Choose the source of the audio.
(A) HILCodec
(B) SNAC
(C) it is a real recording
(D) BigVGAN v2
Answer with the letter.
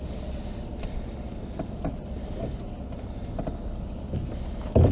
C